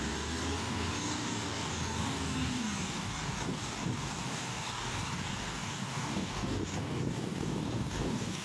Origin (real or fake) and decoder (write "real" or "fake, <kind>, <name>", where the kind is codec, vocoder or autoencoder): fake, codec, DAC